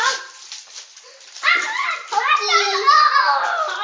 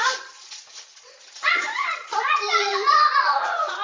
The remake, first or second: second